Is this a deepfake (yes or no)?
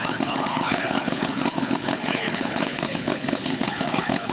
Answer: yes